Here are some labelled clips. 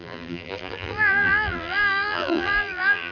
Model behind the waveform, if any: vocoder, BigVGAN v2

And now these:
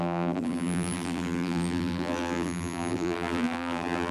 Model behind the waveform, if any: vocoder, BigVGAN v2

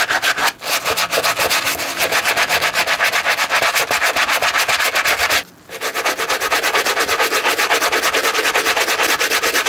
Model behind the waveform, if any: none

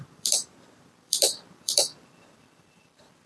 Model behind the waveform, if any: vocoder, BigVGAN v2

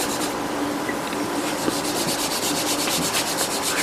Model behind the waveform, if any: none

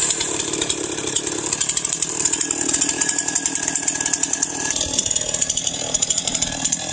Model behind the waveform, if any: vocoder, BigVGAN v2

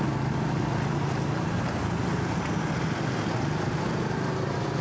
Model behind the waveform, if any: none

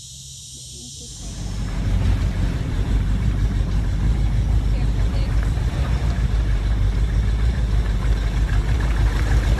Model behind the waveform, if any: vocoder, BigVGAN v2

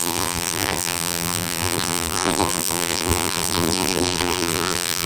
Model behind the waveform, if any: vocoder, BigVGAN v2